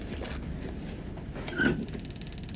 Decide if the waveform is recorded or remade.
recorded